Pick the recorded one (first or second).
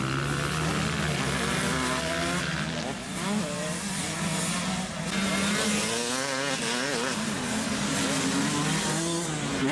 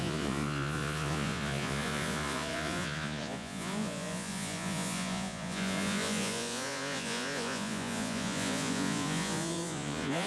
first